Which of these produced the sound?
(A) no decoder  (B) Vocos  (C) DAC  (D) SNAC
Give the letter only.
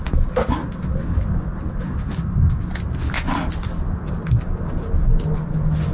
A